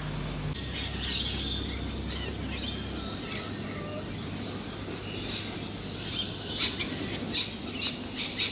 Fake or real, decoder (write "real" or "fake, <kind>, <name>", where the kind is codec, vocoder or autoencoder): real